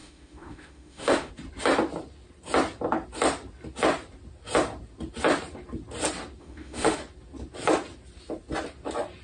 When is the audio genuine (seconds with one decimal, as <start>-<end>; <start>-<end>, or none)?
1.3-6.4; 7.0-9.2